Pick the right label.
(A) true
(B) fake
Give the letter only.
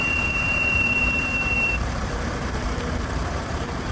B